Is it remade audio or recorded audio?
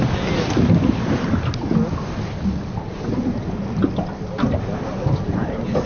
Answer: recorded